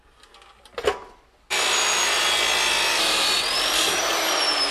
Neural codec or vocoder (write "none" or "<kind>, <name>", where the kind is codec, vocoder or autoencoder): none